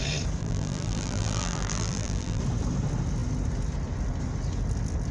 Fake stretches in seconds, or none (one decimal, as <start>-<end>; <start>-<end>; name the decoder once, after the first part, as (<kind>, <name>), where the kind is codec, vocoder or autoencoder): 0.4-2.4 (vocoder, BigVGAN v2)